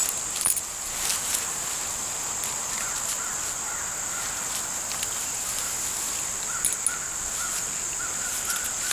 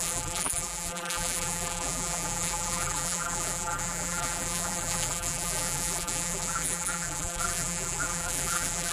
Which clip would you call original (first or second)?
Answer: first